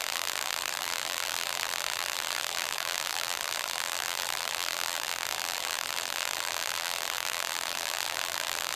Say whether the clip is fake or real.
fake